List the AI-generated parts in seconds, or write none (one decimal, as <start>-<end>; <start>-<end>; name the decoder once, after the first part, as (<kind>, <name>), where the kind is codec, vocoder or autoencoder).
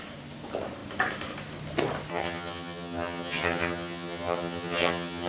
2.1-5.3 (vocoder, HiFi-GAN)